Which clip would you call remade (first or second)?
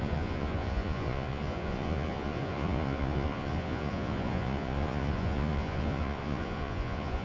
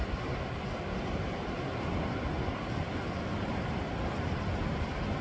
first